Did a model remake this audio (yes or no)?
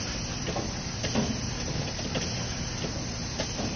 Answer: no